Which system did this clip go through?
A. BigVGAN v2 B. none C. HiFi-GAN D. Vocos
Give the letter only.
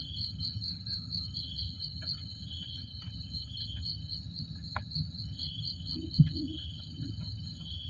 C